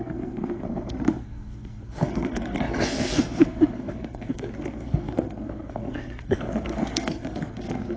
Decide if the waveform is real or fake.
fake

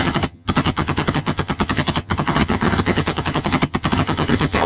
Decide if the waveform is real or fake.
fake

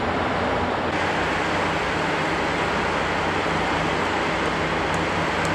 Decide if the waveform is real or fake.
real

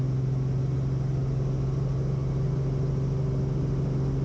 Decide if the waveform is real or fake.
real